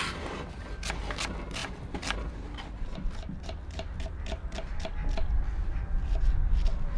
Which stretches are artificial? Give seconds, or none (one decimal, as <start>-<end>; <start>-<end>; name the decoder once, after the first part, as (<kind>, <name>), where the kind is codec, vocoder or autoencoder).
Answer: none